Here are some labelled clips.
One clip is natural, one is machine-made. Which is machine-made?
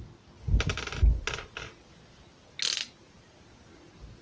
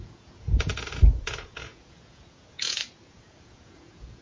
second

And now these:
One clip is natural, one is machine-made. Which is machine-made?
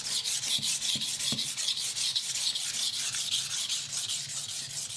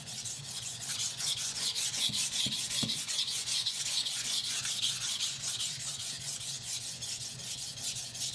second